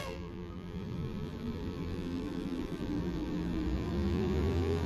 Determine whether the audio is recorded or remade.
remade